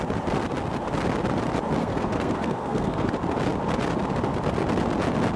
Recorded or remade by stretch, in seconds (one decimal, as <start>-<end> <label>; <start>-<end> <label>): 0.0-1.8 recorded; 1.8-3.1 remade; 3.1-5.4 recorded

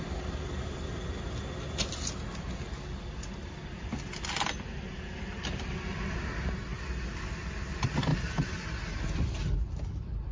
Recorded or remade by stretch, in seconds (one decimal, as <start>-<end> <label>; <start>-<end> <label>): 0.0-8.1 recorded; 8.1-8.6 remade; 8.6-10.3 recorded

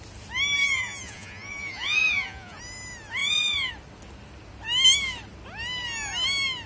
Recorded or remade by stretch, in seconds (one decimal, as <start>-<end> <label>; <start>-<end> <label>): 0.0-0.6 recorded; 0.6-2.6 remade; 2.6-3.2 recorded; 3.2-3.7 remade; 3.7-6.7 recorded

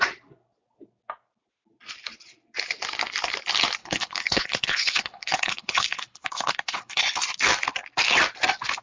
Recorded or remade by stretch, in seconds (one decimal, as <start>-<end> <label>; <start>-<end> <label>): 0.0-3.8 recorded; 3.8-7.0 remade; 7.0-8.8 recorded